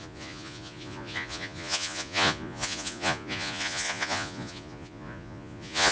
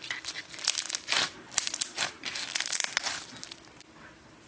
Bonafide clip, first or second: second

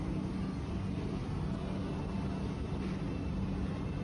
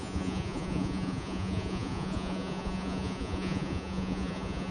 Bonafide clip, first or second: first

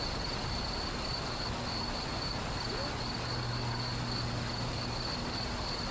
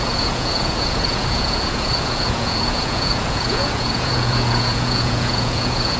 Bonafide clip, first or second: first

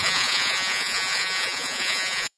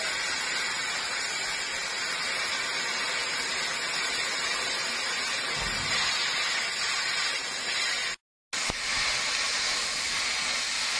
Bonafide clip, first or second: second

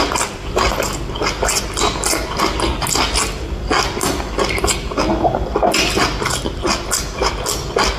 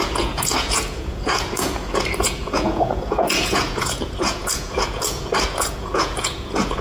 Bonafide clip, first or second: first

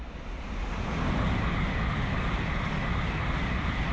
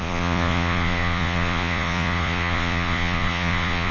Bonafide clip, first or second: first